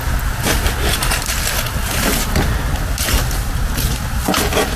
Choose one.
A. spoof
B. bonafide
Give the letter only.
B